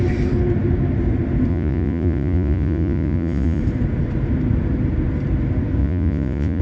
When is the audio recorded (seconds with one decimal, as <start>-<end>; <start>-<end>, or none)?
0.0-1.5; 3.6-5.8